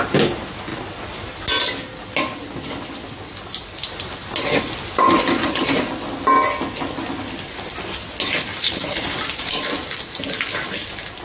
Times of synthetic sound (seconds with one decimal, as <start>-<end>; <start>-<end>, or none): 8.5-9.6